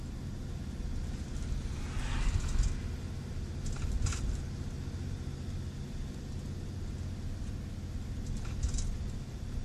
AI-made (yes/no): no